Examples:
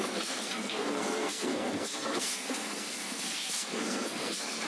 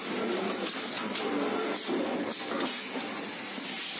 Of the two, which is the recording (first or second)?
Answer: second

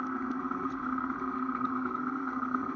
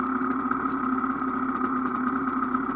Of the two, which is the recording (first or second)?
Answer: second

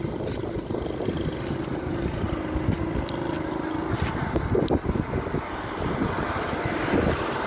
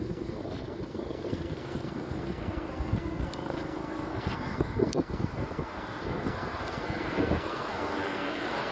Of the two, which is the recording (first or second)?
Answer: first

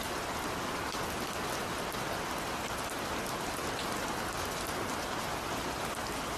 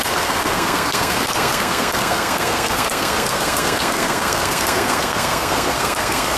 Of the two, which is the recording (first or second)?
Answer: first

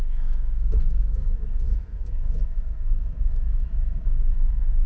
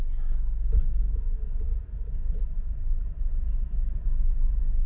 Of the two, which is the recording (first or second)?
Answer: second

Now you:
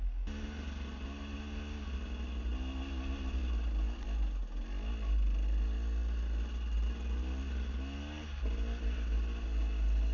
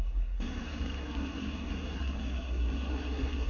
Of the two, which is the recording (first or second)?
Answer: first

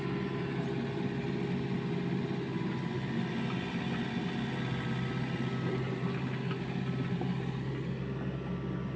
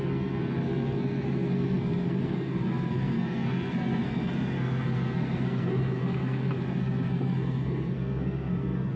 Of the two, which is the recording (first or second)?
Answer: first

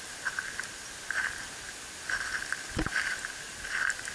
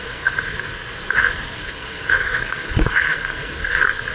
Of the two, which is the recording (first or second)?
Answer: first